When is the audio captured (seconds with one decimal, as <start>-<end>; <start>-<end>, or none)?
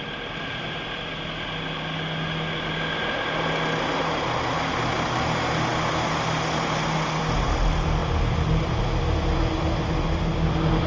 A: 0.0-10.9